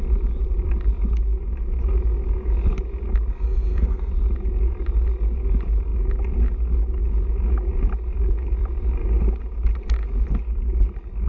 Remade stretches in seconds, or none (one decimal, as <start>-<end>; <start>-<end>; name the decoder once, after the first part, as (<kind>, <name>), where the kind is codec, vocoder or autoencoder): 3.3-4.1 (codec, SNAC)

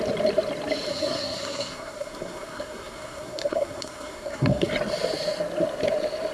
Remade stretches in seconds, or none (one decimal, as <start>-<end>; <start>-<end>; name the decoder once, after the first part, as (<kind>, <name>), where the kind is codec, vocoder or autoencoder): 0.9-4.7 (codec, SNAC)

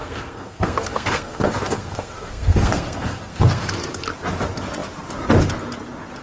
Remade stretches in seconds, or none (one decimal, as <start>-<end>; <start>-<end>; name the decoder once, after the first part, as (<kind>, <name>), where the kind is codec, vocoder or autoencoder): 0.0-3.7 (codec, SNAC)

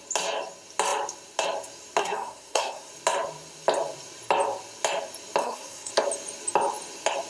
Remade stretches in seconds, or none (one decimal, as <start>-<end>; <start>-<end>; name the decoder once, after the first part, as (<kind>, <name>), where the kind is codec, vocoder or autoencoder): 2.0-2.9 (codec, SNAC); 5.4-5.9

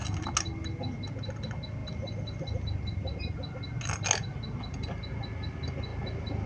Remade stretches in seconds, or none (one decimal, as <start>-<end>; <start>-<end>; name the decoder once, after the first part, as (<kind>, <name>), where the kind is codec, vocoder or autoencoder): none

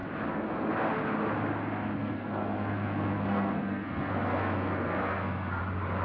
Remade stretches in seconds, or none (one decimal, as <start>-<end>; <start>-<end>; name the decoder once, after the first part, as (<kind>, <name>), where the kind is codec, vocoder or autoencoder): 2.0-5.6 (codec, SNAC)

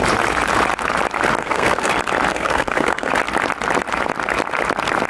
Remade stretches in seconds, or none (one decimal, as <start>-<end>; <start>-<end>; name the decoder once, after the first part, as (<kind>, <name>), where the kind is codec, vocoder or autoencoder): 1.4-1.9 (codec, SNAC); 2.3-3.1